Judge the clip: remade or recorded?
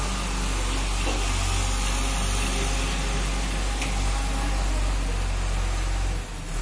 recorded